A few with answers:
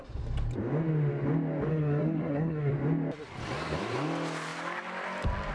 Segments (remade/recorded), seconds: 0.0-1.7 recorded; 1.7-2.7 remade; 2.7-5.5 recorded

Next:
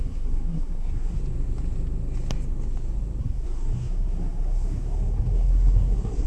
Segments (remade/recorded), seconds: 0.0-1.2 remade; 1.2-3.2 recorded; 3.2-6.3 remade

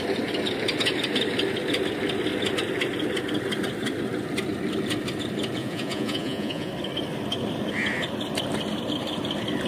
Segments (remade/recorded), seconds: 0.0-5.6 recorded; 5.6-6.7 remade; 6.7-9.7 recorded

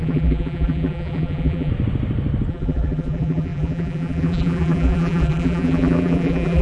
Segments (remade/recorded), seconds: 0.0-1.7 remade; 1.7-2.5 recorded; 2.5-6.6 remade

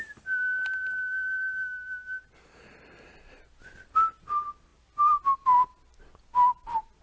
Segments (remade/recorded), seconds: 0.0-4.7 recorded; 4.7-5.2 remade; 5.2-7.0 recorded

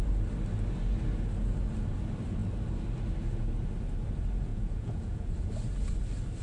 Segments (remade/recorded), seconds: 0.0-4.5 recorded; 4.5-5.5 remade; 5.5-6.4 recorded

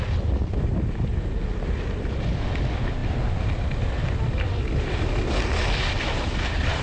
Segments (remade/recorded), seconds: 0.0-6.8 recorded